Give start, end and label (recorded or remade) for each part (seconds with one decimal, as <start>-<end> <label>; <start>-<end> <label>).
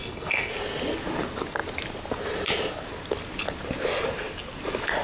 0.0-0.5 remade; 0.5-5.0 recorded